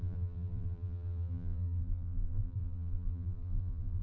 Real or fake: fake